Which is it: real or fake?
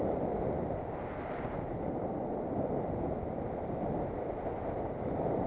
real